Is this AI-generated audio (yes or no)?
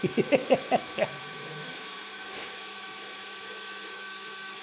yes